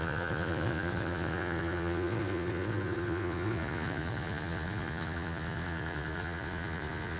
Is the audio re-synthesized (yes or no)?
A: yes